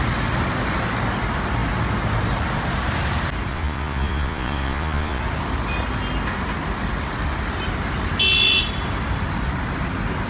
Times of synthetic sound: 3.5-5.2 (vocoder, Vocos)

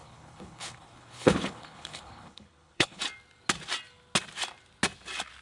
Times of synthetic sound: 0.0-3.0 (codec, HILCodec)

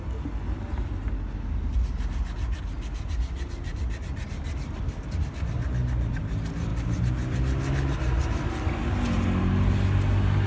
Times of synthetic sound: none

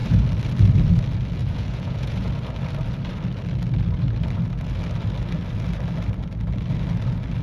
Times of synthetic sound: 1.4-2.3 (vocoder, Vocos)

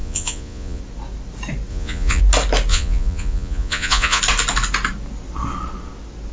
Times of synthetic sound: 0.0-0.8 (vocoder, Vocos); 1.7-2.2; 2.7-4.2

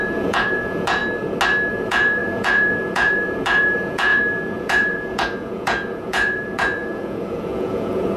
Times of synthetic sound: 0.0-1.0 (vocoder, Vocos); 1.7-8.2